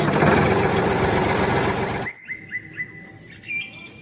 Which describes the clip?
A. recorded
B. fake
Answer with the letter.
A